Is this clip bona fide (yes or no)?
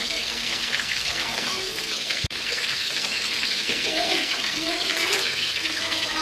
no